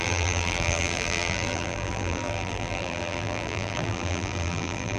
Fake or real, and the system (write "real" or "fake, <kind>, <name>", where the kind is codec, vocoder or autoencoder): fake, vocoder, BigVGAN v2